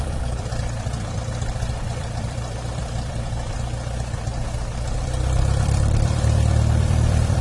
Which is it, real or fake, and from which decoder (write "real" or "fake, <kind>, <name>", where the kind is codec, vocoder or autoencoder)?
fake, vocoder, BigVGAN v2